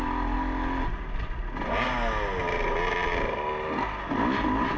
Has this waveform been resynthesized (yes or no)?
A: no